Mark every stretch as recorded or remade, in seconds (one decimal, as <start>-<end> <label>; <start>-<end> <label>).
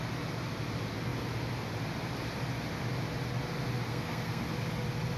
0.0-3.9 recorded; 3.9-4.4 remade; 4.4-5.2 recorded